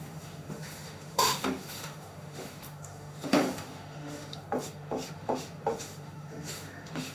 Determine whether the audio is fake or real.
fake